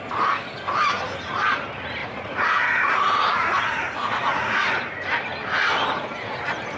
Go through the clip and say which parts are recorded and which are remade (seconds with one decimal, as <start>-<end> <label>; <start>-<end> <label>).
0.0-2.0 recorded; 2.0-4.7 remade; 4.7-6.8 recorded